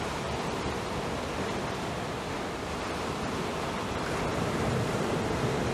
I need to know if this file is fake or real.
real